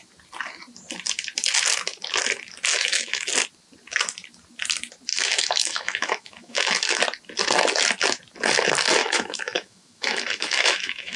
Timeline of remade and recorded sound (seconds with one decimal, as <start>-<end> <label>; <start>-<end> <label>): 0.0-2.7 recorded; 2.7-3.3 remade; 3.3-5.1 recorded; 5.1-7.0 remade; 7.0-9.0 recorded; 9.0-11.2 remade